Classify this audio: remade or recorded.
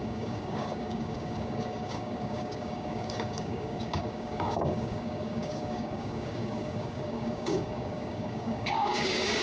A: remade